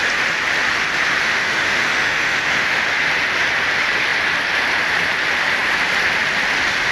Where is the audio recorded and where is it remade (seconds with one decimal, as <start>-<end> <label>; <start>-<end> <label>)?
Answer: 0.0-1.3 recorded; 1.3-2.8 remade; 2.8-6.9 recorded